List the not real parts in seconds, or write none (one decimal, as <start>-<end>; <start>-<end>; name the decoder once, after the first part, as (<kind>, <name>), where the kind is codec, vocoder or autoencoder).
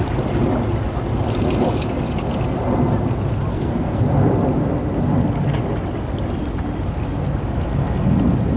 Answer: 3.5-4.0 (codec, SNAC)